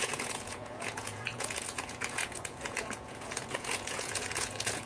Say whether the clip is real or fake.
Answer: fake